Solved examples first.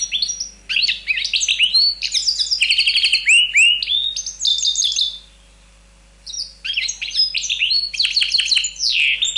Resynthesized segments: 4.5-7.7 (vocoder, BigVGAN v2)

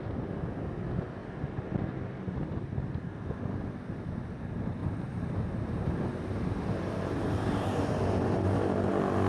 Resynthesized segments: 4.8-8.9 (vocoder, BigVGAN v2)

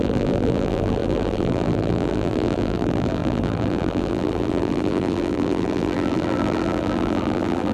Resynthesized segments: 0.0-7.7 (vocoder, BigVGAN v2)

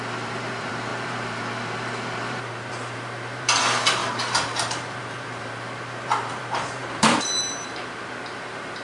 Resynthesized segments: 0.0-8.8 (vocoder, BigVGAN v2)

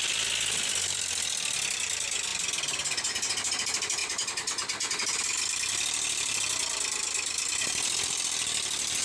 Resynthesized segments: none

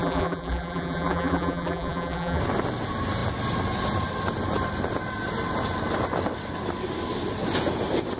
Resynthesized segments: 0.0-2.4 (vocoder, BigVGAN v2)